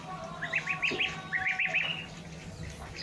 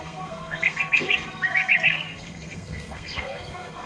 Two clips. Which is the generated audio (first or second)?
second